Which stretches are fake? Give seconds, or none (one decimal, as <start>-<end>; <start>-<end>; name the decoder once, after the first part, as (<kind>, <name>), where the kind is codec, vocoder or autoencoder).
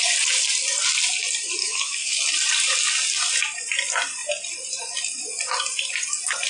1.6-2.2 (autoencoder, DAC-VAE)